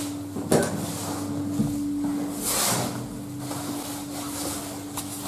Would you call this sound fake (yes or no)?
no